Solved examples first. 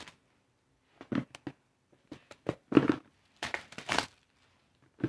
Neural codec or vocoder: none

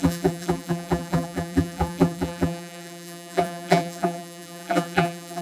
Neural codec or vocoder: vocoder, BigVGAN v2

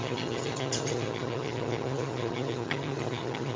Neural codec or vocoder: vocoder, HiFi-GAN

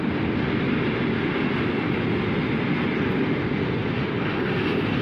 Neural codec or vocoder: none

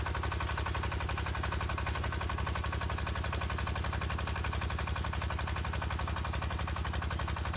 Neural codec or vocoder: none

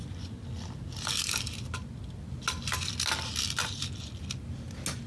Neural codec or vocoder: none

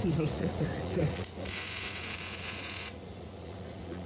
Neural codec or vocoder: vocoder, Vocos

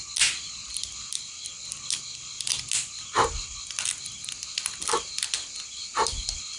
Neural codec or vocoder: none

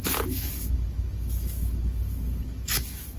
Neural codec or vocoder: autoencoder, DAC-VAE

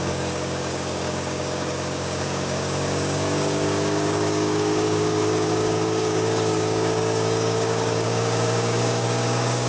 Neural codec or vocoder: codec, DAC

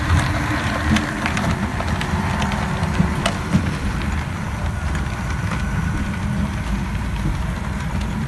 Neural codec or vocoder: vocoder, BigVGAN v2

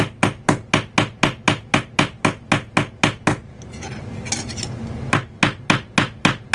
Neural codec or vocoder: none